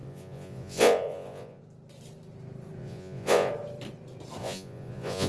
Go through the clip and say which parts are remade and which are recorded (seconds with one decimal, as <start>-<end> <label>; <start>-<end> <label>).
0.0-1.6 remade; 1.6-2.8 recorded; 2.8-3.5 remade; 3.5-4.4 recorded; 4.4-5.3 remade